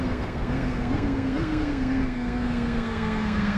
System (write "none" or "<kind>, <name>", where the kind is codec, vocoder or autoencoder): codec, SNAC